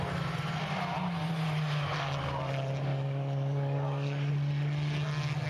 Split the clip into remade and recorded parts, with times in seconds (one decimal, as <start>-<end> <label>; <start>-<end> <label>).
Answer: 0.0-2.9 recorded; 2.9-4.3 remade; 4.3-5.5 recorded